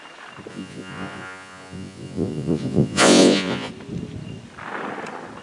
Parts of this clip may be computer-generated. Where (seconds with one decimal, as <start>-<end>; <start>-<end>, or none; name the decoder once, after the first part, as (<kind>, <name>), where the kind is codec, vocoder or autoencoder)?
0.5-3.7 (vocoder, Vocos)